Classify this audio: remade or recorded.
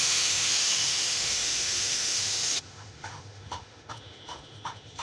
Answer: remade